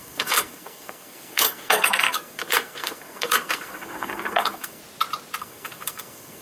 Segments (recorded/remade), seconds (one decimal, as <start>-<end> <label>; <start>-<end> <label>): 0.0-4.8 remade; 4.8-5.4 recorded; 5.4-6.4 remade